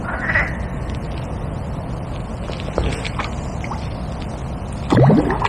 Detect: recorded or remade recorded